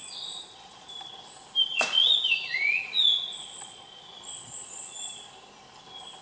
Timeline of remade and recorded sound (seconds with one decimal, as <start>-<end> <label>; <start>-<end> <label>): 0.0-0.9 remade; 0.9-1.7 recorded; 1.7-5.2 remade; 5.2-6.2 recorded